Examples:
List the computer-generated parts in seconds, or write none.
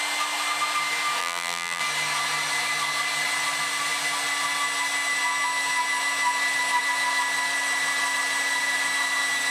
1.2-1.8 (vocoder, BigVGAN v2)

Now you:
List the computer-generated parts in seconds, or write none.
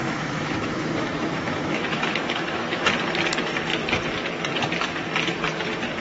0.0-2.8 (autoencoder, DAC-VAE)